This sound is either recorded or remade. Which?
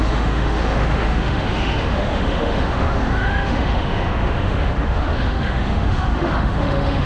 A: remade